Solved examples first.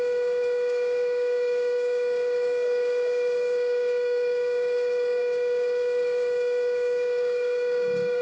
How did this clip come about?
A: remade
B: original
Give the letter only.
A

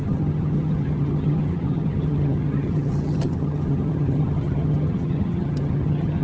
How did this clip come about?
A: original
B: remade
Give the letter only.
B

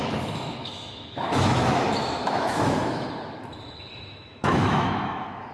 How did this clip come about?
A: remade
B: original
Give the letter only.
A